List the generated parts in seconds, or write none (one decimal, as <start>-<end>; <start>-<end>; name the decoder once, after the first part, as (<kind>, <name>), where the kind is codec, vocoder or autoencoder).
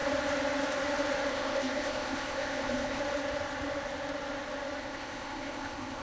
1.3-3.0 (codec, ZipCodec); 4.8-6.0